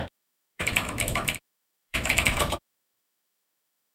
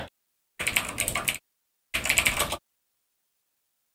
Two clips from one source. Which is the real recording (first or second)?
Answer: second